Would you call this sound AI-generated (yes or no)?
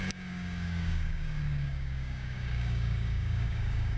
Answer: yes